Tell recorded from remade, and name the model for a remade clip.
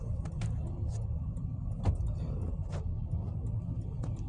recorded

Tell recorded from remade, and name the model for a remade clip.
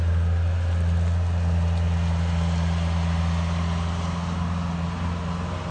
recorded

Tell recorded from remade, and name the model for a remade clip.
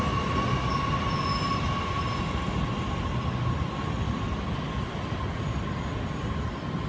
recorded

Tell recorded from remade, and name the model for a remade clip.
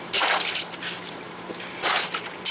remade, vocoder, BigVGAN v2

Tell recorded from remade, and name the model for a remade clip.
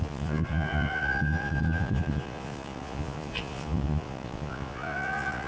remade, vocoder, Vocos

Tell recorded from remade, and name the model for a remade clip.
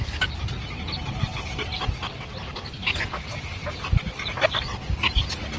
recorded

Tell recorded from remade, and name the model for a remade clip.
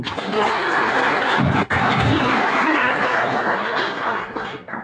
remade, codec, SNAC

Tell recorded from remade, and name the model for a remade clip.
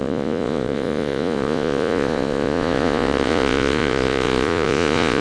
remade, vocoder, Vocos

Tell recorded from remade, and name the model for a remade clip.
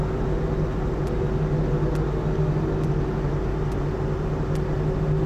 recorded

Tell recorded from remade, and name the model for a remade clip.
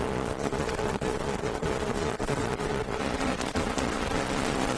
remade, vocoder, Vocos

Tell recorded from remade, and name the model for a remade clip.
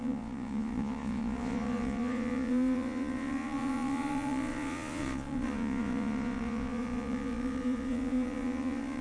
remade, vocoder, Vocos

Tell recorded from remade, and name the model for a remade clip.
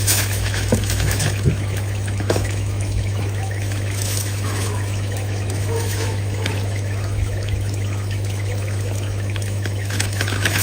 remade, autoencoder, DAC-VAE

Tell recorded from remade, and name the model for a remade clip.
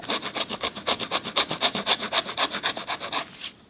recorded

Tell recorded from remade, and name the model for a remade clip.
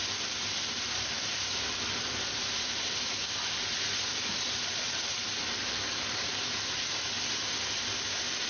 remade, vocoder, BigVGAN v2